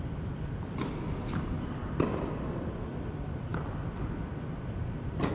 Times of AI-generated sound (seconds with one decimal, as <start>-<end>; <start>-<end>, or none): none

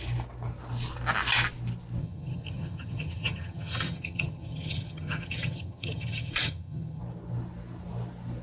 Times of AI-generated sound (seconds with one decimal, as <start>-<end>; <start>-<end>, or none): 2.0-7.0